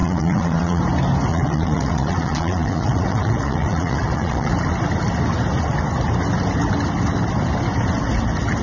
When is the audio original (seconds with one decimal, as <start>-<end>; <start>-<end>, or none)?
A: 0.8-1.3; 4.5-8.6